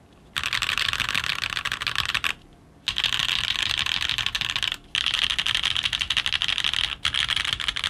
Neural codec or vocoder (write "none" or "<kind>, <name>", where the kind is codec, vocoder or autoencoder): none